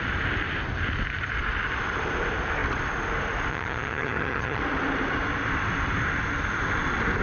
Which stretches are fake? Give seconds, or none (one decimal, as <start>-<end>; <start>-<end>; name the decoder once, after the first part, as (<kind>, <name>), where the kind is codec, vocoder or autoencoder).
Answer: 3.5-4.6 (vocoder, HiFi-GAN)